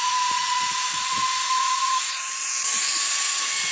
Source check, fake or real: fake